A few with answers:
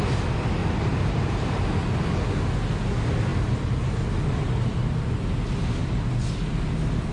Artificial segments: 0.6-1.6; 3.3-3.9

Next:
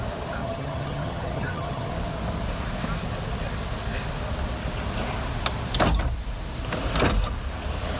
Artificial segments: 0.4-1.9